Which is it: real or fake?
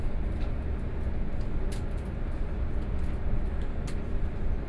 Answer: real